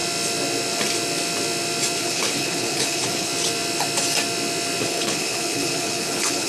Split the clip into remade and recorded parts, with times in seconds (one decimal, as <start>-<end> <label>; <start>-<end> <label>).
0.0-2.0 recorded; 2.0-3.3 remade; 3.3-4.8 recorded; 4.8-6.5 remade